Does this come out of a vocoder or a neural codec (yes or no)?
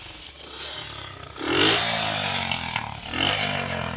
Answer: no